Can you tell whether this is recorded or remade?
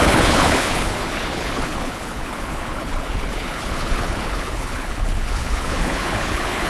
remade